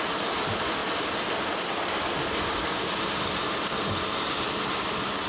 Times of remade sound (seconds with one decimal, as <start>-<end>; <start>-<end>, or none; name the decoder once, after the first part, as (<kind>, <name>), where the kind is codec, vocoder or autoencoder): none